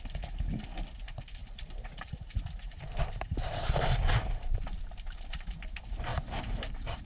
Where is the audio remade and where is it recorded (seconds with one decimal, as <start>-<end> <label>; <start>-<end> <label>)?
0.0-1.4 recorded; 1.4-5.6 remade; 5.6-6.1 recorded; 6.1-7.0 remade